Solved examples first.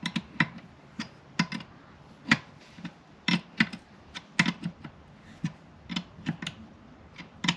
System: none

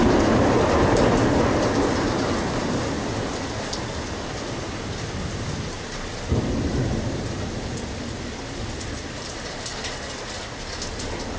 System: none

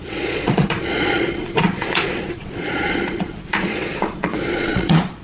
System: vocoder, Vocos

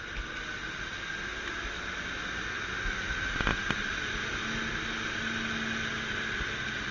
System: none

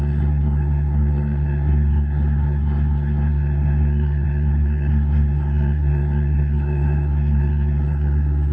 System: codec, SNAC